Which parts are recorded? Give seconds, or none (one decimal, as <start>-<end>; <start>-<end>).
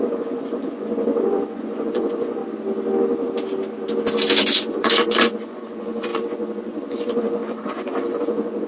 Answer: 2.4-4.4